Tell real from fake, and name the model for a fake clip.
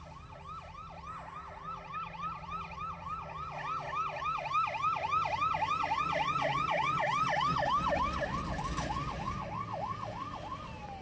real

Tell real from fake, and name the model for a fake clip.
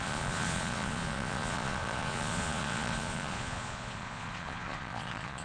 fake, vocoder, Vocos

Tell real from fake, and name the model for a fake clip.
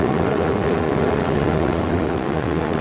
fake, vocoder, WaveNeXt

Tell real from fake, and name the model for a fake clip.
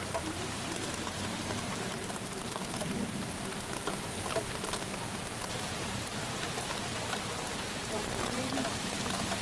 fake, vocoder, BigVGAN v2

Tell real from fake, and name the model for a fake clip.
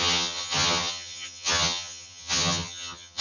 fake, vocoder, HiFi-GAN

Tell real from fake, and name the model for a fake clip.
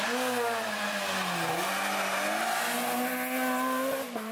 real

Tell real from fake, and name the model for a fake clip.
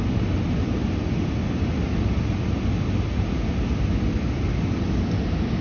real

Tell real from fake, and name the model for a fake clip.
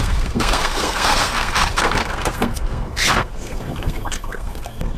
fake, codec, SNAC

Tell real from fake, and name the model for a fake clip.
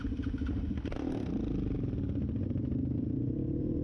real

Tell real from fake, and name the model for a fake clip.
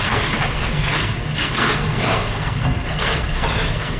fake, codec, SNAC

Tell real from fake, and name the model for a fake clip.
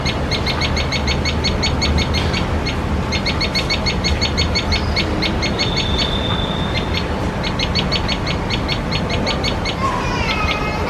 real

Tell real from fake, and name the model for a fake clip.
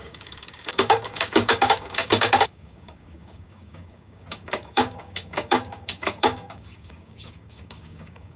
fake, codec, DAC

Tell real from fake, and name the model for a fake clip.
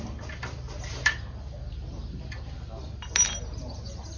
real